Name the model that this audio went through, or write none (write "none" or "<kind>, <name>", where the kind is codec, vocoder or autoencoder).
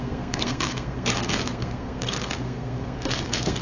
codec, SNAC